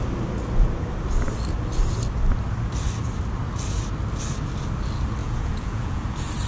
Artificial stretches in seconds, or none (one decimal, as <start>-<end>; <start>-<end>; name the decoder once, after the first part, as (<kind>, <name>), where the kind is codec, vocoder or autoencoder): 5.2-6.0 (vocoder, Vocos)